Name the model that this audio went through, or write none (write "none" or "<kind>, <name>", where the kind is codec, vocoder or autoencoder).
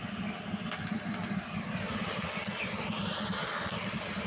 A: none